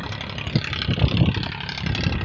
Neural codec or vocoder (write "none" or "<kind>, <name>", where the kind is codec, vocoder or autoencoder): none